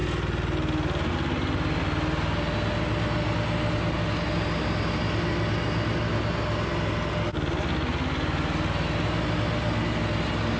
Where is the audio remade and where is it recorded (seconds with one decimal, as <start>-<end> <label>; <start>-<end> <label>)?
0.0-10.6 recorded